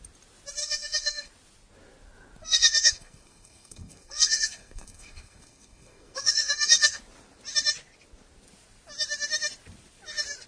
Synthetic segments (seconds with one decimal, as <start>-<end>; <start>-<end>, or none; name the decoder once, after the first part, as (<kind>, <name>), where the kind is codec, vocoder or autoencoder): 0.6-1.3 (codec, SNAC); 2.4-7.0